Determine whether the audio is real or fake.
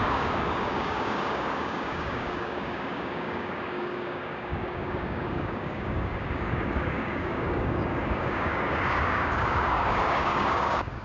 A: fake